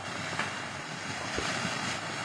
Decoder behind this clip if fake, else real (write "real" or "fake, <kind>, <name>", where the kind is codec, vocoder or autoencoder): real